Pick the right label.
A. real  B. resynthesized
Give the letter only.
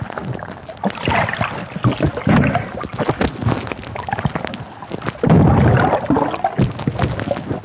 A